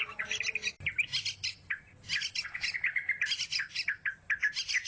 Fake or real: real